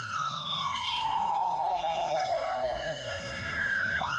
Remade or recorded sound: remade